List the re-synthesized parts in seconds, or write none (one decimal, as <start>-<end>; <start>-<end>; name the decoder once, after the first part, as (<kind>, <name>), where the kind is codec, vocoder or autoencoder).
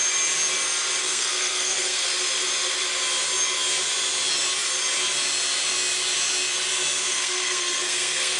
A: 1.0-2.1 (codec, SNAC); 7.1-8.4